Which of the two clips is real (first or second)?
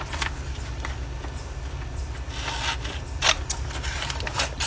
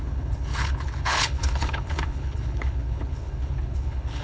first